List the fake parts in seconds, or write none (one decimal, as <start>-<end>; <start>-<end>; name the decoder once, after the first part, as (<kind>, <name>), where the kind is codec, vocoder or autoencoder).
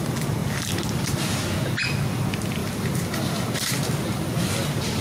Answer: 2.6-5.0 (vocoder, BigVGAN v2)